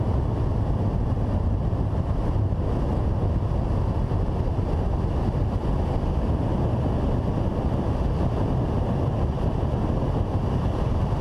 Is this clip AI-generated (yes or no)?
no